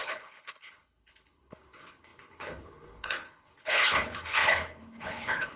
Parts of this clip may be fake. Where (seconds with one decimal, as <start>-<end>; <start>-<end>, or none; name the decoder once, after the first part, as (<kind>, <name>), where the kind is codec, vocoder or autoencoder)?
0.0-5.6 (codec, HILCodec)